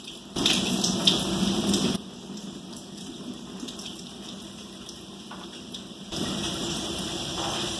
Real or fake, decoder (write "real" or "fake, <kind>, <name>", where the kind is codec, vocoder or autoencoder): fake, vocoder, BigVGAN v2